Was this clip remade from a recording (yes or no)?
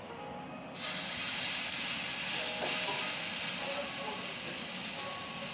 no